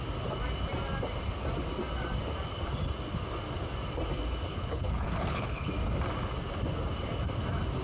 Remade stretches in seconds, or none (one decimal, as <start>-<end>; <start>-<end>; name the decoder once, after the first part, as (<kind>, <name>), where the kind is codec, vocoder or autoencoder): 4.5-5.7 (codec, HILCodec)